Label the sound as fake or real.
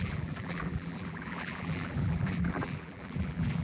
fake